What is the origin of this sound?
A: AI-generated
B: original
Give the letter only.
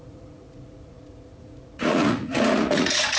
A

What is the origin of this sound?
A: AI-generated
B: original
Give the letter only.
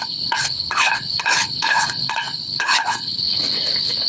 A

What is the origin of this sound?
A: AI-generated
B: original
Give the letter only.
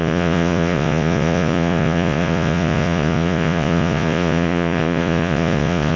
A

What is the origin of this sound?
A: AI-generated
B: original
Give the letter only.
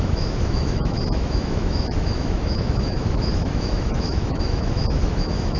A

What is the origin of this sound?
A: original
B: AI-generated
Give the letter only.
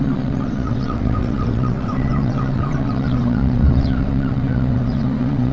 B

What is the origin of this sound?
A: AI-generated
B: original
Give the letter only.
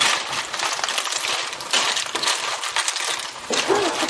B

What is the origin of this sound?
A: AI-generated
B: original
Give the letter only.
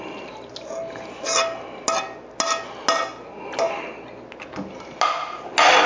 B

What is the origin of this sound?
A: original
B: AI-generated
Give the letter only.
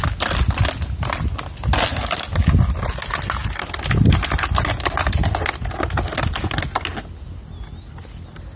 A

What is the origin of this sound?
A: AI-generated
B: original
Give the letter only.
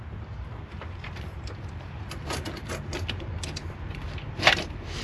A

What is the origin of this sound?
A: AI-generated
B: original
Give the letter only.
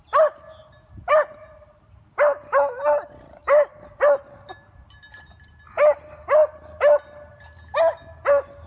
B